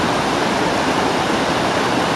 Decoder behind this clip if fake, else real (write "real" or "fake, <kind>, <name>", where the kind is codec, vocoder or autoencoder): real